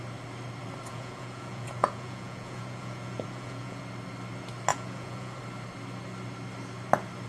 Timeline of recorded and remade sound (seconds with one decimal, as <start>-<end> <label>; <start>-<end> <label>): 0.0-0.9 recorded; 0.9-3.8 remade; 3.8-4.7 recorded; 4.7-5.4 remade; 5.4-7.3 recorded